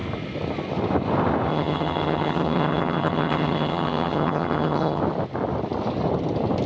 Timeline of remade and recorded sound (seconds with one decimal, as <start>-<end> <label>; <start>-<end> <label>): 0.0-1.5 recorded; 1.5-5.0 remade; 5.0-6.7 recorded